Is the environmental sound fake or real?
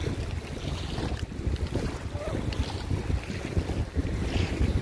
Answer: real